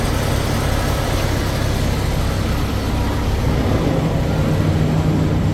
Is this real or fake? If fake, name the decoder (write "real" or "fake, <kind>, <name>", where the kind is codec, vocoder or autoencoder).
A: real